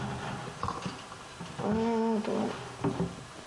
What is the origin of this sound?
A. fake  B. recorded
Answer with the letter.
B